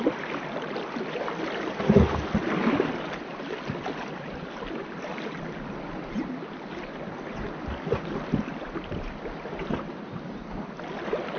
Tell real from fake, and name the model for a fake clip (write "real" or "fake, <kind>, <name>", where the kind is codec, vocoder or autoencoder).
real